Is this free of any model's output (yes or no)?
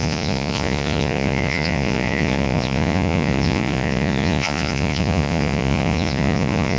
no